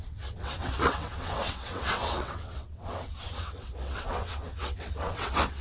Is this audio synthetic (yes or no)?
yes